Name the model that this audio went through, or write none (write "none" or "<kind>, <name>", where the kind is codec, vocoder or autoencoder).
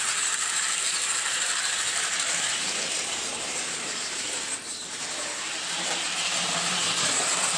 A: vocoder, BigVGAN v2